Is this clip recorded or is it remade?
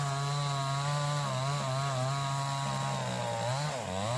recorded